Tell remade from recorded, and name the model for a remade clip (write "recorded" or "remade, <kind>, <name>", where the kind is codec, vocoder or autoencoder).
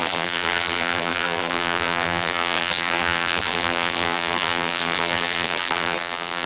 remade, vocoder, BigVGAN v2